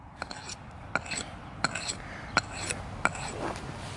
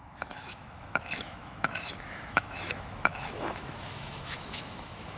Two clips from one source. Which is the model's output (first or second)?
second